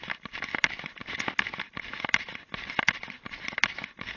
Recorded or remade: recorded